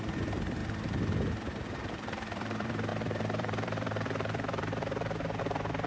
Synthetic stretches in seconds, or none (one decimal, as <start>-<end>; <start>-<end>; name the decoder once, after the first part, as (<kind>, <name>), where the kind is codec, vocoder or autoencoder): 0.0-0.6 (vocoder, BigVGAN v2); 1.3-5.9